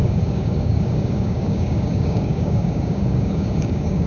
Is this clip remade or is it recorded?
remade